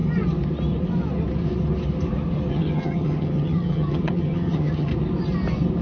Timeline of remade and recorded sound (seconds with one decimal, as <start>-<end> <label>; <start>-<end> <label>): 0.0-2.5 recorded; 2.5-4.9 remade; 4.9-5.8 recorded